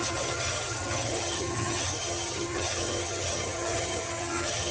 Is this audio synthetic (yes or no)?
yes